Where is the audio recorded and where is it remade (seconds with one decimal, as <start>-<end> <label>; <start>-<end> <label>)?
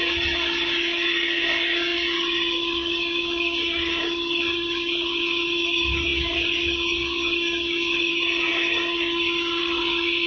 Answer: 0.0-10.3 remade